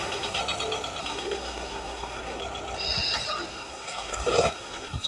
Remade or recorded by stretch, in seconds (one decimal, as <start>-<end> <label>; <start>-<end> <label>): 0.0-0.4 remade; 0.4-1.0 recorded; 1.0-2.4 remade; 2.4-3.5 recorded; 3.5-5.1 remade